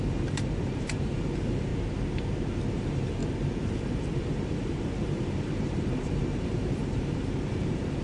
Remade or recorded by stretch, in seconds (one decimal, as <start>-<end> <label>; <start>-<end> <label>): 0.0-1.7 remade; 1.7-2.7 recorded; 2.7-3.2 remade; 3.2-3.7 recorded; 3.7-8.0 remade